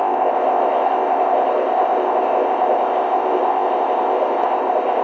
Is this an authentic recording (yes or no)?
no